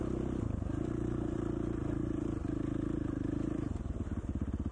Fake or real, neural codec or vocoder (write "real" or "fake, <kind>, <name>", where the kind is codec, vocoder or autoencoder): fake, vocoder, BigVGAN v2